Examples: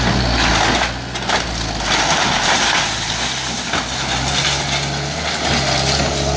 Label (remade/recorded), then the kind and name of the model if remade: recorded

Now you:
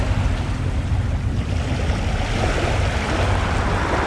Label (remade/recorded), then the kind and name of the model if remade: recorded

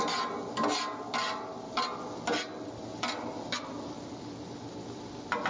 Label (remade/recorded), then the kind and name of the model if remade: recorded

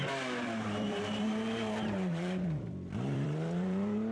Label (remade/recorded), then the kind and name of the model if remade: remade, vocoder, BigVGAN v2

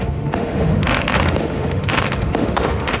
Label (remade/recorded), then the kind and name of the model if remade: remade, autoencoder, DAC-VAE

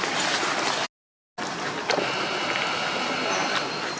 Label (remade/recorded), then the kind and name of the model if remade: recorded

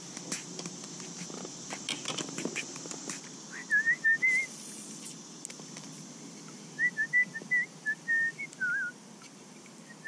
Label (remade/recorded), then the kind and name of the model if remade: recorded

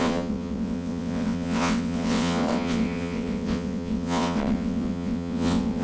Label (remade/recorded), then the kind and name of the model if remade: remade, vocoder, WaveNeXt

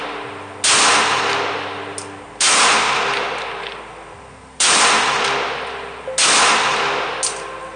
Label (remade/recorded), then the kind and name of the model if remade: recorded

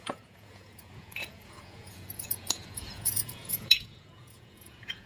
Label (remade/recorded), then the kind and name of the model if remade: remade, vocoder, Vocos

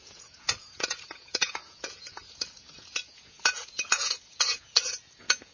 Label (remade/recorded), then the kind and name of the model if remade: remade, vocoder, Vocos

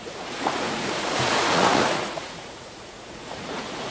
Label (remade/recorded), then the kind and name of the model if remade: remade, vocoder, Vocos